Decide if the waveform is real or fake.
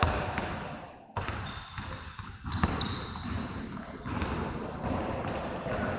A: real